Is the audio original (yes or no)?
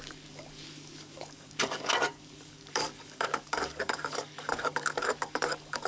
no